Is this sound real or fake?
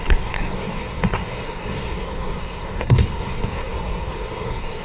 fake